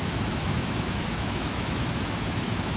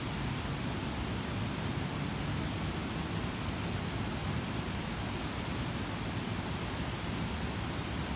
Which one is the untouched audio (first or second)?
second